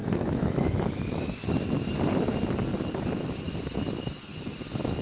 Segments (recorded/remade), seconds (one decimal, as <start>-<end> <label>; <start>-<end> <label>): 0.0-1.3 remade; 1.3-5.0 recorded

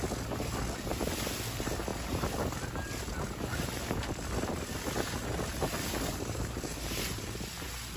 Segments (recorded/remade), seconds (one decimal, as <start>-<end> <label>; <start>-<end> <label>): 0.0-6.1 recorded; 6.1-7.5 remade; 7.5-8.0 recorded

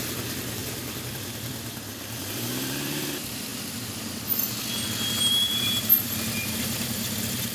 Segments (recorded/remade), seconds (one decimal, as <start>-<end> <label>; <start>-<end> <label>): 0.0-3.5 remade; 3.5-5.3 recorded; 5.3-7.5 remade